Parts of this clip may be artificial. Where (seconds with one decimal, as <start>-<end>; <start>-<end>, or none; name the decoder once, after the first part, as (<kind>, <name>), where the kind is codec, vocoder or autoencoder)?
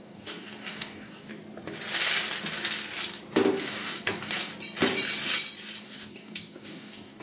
0.0-1.3 (codec, DAC); 3.6-4.5; 5.8-7.2